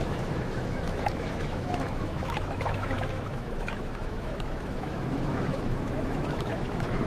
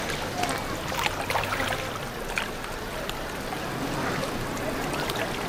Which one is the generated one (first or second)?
first